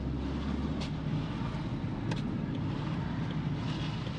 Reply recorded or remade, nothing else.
recorded